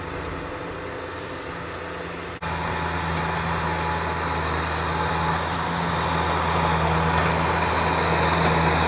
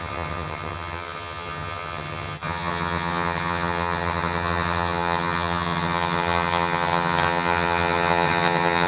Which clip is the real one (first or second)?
first